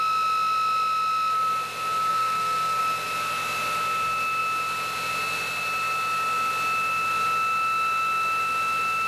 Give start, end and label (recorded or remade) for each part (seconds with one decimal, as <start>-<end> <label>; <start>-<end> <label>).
0.0-2.1 recorded; 2.1-2.8 remade; 2.8-9.1 recorded